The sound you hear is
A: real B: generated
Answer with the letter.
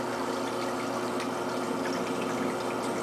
A